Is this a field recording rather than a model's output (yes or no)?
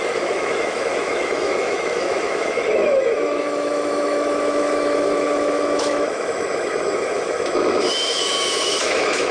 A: no